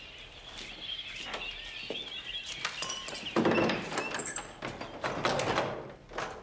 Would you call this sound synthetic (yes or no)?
no